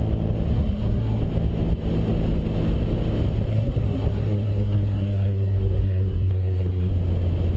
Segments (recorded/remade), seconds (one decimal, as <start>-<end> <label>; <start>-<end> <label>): 0.0-0.5 recorded; 0.5-1.2 remade; 1.2-3.5 recorded; 3.5-6.9 remade; 6.9-7.6 recorded